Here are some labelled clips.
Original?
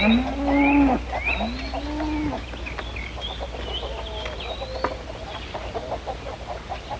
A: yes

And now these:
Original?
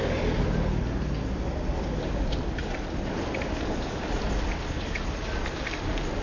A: yes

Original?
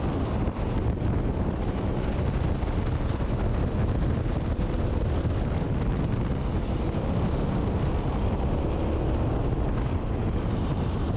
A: yes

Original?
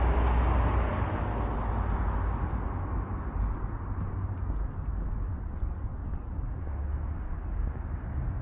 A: yes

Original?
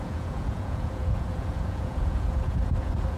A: no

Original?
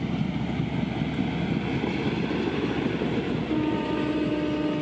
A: yes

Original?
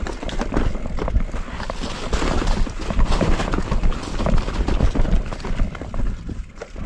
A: yes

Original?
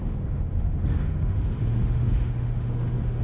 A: no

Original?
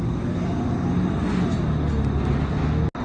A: yes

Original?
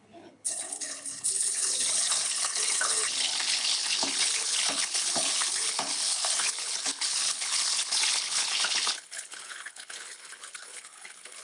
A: no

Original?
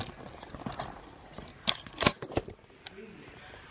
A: yes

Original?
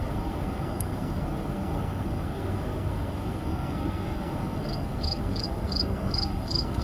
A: no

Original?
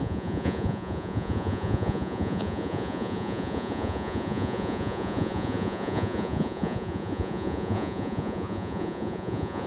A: no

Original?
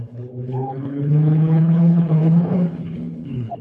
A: no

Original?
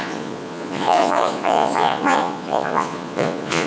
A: no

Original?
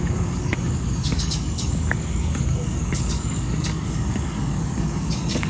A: no